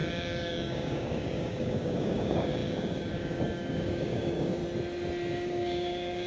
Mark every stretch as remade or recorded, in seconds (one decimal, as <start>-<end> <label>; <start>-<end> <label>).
0.0-4.6 remade; 4.6-5.3 recorded; 5.3-6.3 remade